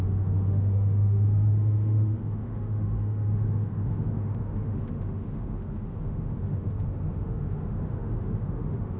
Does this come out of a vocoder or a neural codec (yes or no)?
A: yes